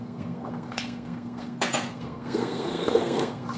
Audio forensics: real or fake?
fake